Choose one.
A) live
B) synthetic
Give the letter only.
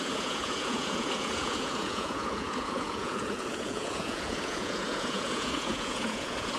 B